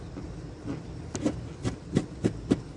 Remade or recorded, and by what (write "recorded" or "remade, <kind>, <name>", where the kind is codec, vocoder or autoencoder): recorded